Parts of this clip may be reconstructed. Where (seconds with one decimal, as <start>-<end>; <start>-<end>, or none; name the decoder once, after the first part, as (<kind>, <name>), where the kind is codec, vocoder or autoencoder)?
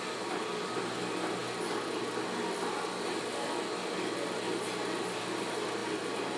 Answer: none